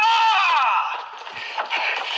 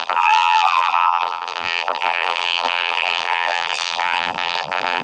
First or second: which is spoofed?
second